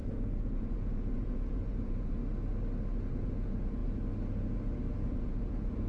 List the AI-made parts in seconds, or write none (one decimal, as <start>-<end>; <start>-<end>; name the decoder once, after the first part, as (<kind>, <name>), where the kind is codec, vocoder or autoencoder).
0.0-2.2 (vocoder, Vocos); 3.1-3.8; 5.1-5.9